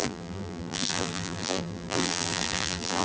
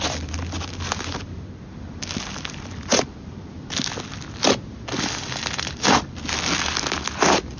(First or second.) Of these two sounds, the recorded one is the second